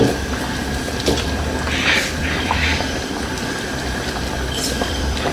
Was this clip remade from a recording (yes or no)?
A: yes